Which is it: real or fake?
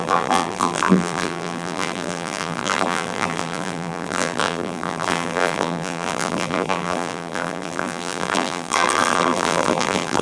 fake